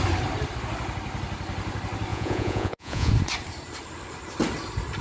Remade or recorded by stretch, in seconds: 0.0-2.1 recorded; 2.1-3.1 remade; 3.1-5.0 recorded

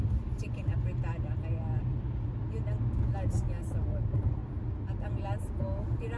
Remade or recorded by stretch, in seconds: 0.0-6.2 recorded

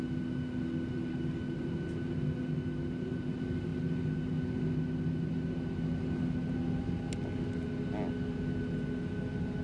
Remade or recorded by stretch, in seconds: 0.0-9.6 recorded

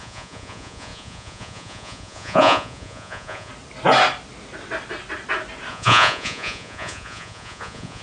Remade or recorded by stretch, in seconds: 0.0-3.5 remade; 3.5-5.7 recorded; 5.7-8.0 remade